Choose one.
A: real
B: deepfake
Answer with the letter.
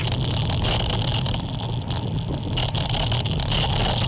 A